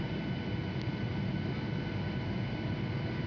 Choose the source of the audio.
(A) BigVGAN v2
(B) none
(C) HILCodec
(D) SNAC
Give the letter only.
B